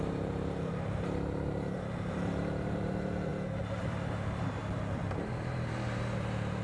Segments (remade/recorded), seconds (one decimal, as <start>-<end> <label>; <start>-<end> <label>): 0.0-3.3 remade; 3.3-3.8 recorded; 3.8-4.6 remade; 4.6-5.3 recorded; 5.3-6.6 remade